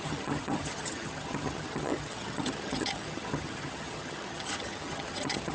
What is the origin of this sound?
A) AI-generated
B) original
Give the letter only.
A